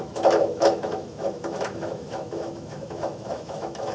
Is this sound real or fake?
fake